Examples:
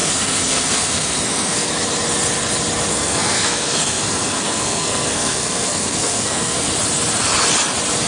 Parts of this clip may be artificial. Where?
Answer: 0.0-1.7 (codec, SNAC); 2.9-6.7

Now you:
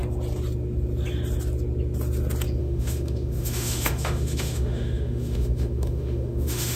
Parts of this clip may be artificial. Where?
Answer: 2.6-6.8 (autoencoder, DAC-VAE)

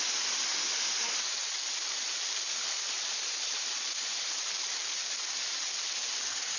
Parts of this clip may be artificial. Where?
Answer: none

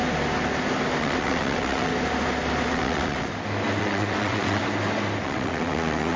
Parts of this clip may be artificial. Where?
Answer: 1.0-1.9 (vocoder, WaveNeXt); 2.7-3.3; 3.8-4.6; 5.2-6.2

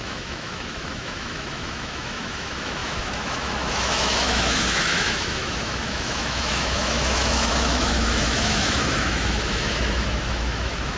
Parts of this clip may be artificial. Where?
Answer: 0.0-11.0 (autoencoder, DAC-VAE)

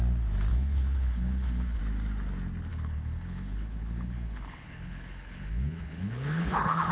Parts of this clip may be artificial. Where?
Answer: 0.5-1.8 (codec, HILCodec); 2.7-6.9

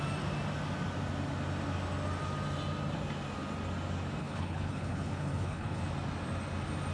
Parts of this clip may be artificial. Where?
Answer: 4.2-5.8 (codec, HILCodec)